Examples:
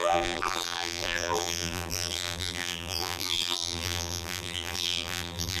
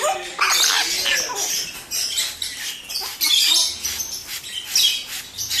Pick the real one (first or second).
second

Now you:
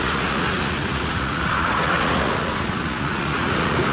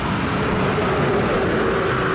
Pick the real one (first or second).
second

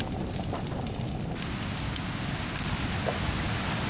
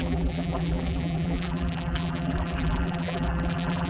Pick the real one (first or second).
first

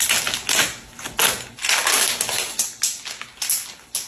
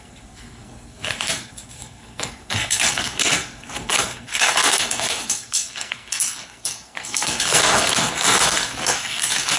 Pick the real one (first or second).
first